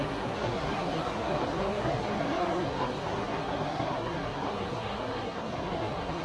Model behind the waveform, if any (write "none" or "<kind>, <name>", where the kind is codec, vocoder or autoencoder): codec, SNAC